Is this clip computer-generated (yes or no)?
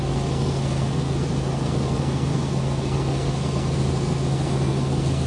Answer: yes